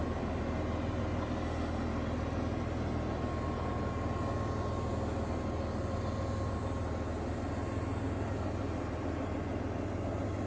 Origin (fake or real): real